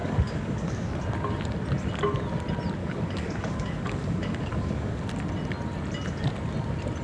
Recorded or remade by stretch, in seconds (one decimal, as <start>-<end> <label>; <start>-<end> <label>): 0.0-1.0 remade; 1.0-2.8 recorded; 2.8-5.0 remade; 5.0-7.0 recorded